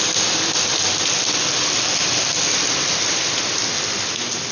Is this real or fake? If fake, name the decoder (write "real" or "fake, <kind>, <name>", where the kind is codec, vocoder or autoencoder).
real